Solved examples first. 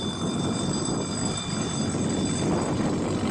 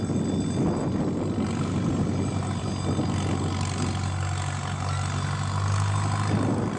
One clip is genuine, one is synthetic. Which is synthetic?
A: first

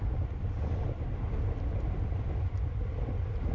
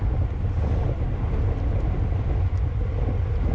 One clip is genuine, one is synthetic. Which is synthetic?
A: first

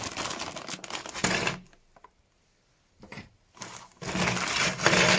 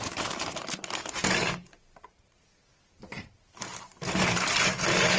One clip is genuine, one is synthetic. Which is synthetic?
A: second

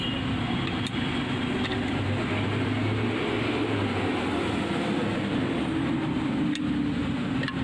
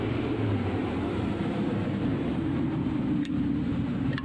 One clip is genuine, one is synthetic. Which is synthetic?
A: second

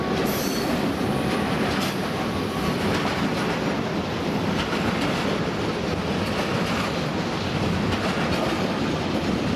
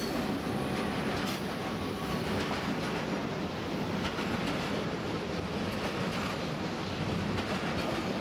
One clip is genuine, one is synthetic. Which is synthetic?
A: first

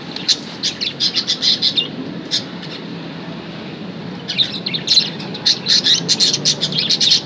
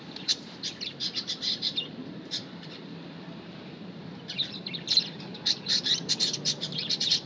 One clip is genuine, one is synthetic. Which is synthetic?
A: second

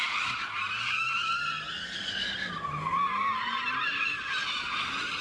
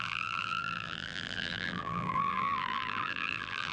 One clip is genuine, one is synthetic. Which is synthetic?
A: second